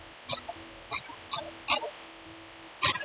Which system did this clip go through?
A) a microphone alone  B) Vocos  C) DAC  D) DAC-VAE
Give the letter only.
A